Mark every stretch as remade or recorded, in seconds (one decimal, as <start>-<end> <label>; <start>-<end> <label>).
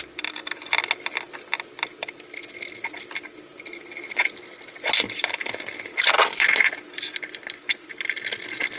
0.0-8.8 recorded